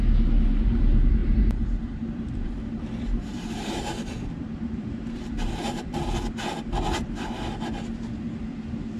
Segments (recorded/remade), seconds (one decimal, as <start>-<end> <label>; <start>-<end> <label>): 0.0-1.2 recorded; 1.2-6.1 remade; 6.1-9.0 recorded

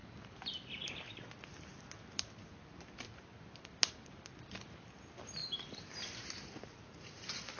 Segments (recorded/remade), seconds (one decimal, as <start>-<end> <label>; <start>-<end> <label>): 0.0-5.4 recorded; 5.4-7.6 remade

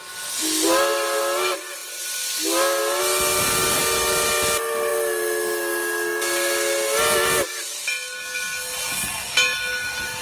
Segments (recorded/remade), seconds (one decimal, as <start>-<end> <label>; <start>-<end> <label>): 0.0-10.2 recorded

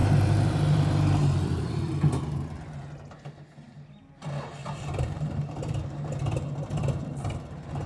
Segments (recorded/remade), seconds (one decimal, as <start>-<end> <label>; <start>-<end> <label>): 0.0-1.8 remade; 1.8-4.6 recorded; 4.6-5.4 remade; 5.4-7.9 recorded

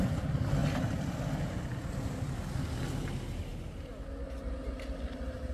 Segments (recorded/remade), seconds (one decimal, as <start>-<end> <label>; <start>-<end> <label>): 0.0-5.5 recorded